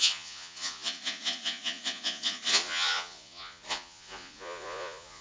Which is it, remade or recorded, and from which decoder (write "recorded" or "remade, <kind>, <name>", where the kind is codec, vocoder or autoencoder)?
remade, vocoder, Vocos